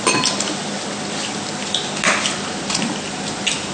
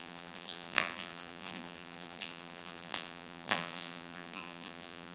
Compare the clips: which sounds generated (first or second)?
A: second